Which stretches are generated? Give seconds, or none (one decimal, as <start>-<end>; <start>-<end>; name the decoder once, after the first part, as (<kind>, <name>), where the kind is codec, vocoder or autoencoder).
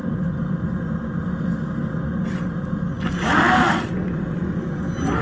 none